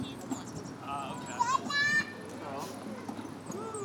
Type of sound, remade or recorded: recorded